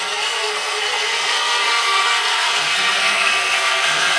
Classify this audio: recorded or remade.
remade